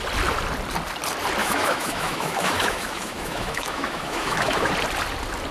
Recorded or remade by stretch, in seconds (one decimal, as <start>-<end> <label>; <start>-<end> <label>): 0.0-1.4 recorded; 1.4-4.7 remade; 4.7-5.5 recorded